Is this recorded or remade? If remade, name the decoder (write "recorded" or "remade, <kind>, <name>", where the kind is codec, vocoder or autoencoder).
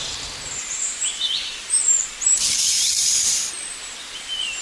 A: remade, vocoder, BigVGAN v2